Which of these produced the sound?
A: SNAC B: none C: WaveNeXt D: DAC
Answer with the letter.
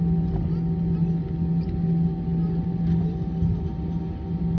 B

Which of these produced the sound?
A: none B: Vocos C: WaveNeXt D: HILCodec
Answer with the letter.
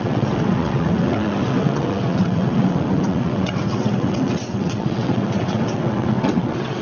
C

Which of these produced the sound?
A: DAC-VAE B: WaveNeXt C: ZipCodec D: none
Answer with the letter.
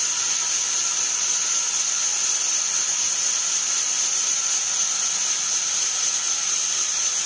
D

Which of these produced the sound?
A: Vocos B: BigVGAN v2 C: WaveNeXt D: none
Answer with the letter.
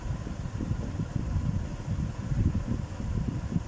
D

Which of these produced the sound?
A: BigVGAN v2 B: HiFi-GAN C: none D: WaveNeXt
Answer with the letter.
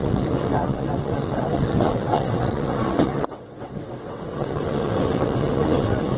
D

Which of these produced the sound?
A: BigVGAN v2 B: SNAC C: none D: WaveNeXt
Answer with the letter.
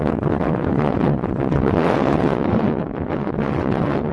D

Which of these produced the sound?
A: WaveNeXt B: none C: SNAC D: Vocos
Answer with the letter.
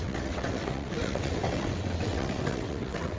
A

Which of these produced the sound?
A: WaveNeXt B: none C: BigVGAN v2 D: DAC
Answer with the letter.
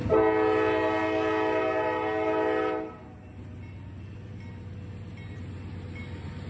B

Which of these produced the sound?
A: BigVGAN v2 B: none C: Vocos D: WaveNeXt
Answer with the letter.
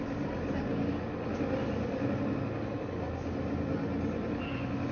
B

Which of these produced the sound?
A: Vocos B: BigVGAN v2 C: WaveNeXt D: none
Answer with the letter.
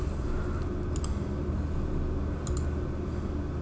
D